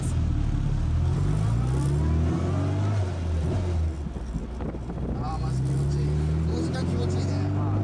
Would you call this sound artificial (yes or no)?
no